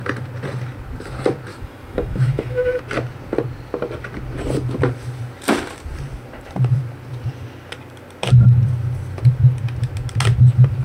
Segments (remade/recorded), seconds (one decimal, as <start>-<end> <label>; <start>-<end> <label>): 0.0-1.5 recorded; 1.5-2.8 remade; 2.8-10.8 recorded